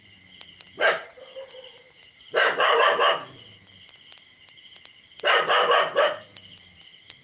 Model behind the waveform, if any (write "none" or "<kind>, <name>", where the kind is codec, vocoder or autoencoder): none